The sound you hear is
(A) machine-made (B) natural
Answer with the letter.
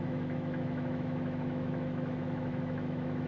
A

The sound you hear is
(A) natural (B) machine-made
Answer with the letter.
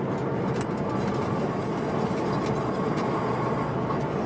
A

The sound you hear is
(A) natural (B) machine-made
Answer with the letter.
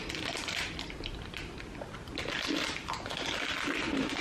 A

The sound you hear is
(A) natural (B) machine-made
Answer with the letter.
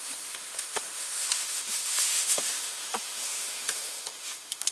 B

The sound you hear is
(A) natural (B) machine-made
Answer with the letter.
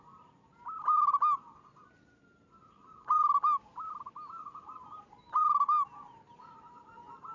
A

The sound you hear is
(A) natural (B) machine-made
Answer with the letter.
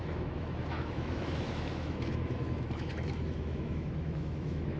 B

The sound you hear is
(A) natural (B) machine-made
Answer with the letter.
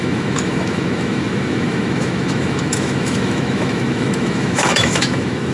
B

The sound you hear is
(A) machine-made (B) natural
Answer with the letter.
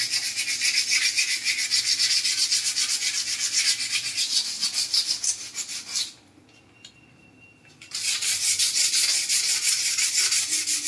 B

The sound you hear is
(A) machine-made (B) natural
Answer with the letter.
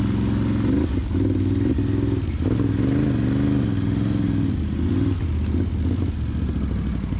B